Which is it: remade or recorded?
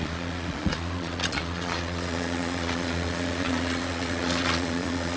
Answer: remade